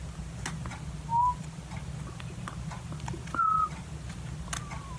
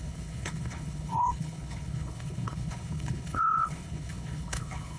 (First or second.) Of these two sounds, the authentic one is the first